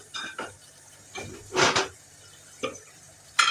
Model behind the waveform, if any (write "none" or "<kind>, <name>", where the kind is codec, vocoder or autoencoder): vocoder, BigVGAN v2